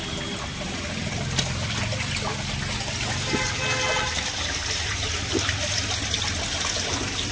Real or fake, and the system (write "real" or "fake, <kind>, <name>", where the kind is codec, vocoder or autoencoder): real